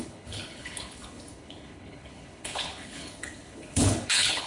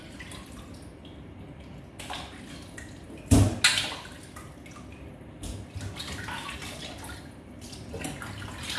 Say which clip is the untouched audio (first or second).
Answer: second